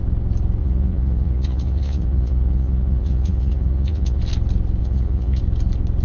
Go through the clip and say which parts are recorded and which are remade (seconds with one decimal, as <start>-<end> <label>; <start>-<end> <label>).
0.0-0.6 recorded; 0.6-4.2 remade; 4.2-4.8 recorded; 4.8-5.4 remade; 5.4-6.0 recorded